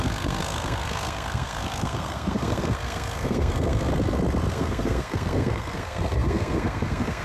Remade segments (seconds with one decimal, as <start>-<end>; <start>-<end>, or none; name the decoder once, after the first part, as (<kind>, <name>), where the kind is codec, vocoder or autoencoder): 0.0-3.9 (codec, SNAC); 4.5-7.2